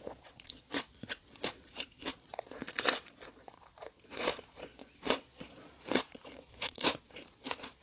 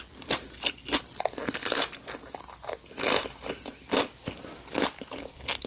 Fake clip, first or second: first